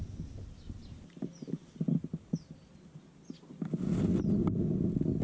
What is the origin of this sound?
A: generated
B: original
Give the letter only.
B